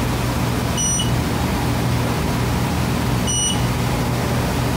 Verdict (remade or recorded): recorded